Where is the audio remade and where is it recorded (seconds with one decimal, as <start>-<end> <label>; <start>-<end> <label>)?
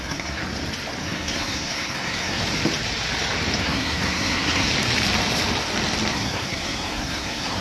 0.0-0.4 remade; 0.4-1.0 recorded; 1.0-2.4 remade; 2.4-3.6 recorded; 3.6-4.7 remade; 4.7-6.1 recorded; 6.1-7.6 remade